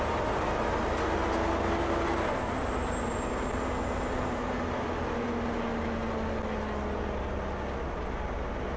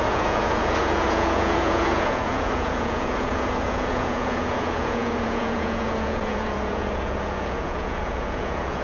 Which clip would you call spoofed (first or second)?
second